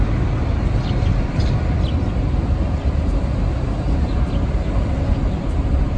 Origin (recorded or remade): recorded